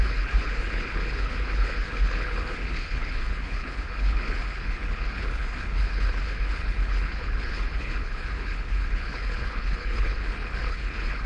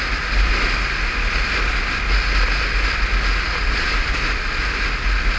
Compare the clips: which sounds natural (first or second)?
second